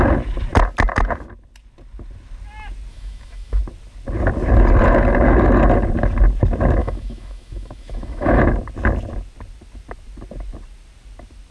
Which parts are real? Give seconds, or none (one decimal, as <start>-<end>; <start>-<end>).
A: 0.0-2.9; 3.6-6.8; 8.4-11.5